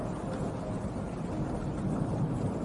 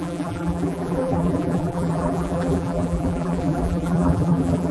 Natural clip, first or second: first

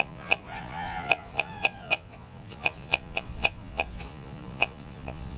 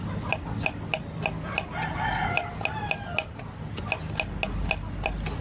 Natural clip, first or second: second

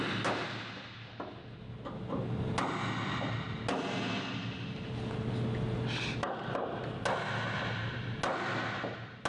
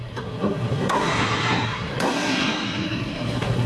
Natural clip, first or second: first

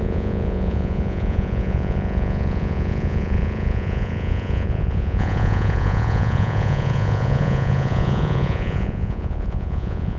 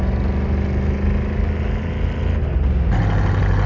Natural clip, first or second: second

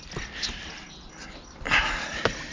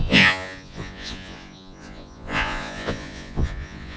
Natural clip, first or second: first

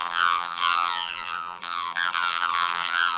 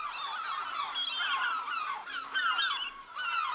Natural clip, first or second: second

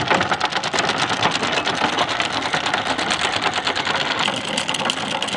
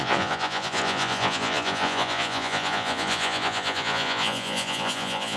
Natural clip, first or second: first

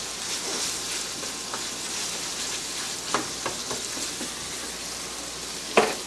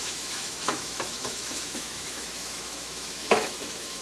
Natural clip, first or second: first